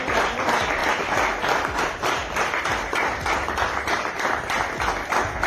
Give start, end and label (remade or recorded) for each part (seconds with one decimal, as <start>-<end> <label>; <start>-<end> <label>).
0.0-5.5 recorded